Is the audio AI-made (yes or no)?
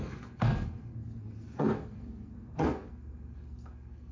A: yes